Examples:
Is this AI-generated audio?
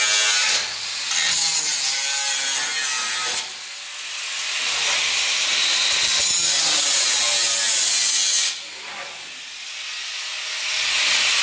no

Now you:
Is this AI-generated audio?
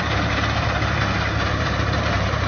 yes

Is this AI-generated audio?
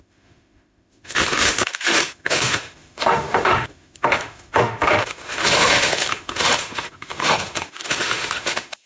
yes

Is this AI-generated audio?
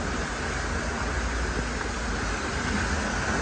no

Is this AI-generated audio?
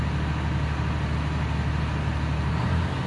no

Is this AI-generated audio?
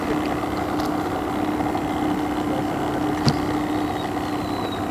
no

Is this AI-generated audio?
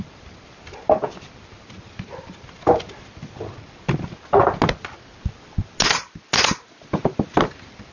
no